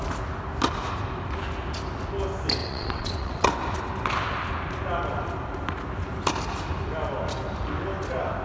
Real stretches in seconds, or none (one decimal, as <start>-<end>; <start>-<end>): 0.0-2.6; 3.5-8.4